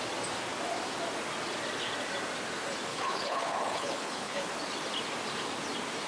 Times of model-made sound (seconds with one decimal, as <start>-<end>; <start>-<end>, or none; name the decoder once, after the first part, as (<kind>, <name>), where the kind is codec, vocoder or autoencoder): 2.9-4.5 (codec, HILCodec)